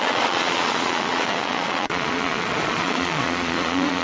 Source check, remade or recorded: remade